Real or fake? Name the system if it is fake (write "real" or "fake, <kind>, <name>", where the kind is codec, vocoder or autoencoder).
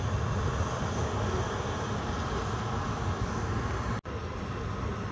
real